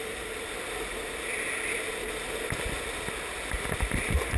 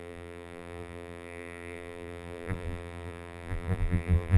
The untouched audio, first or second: first